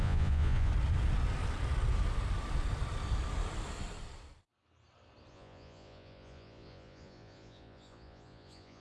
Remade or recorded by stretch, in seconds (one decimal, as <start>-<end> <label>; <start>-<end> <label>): 0.0-0.7 remade; 0.7-5.3 recorded; 5.3-8.8 remade